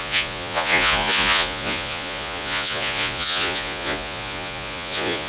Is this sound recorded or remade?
remade